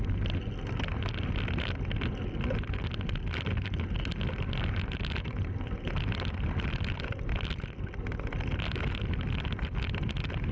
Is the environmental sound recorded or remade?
recorded